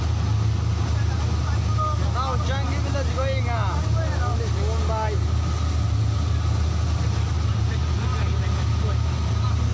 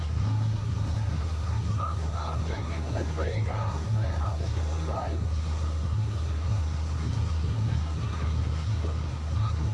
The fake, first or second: second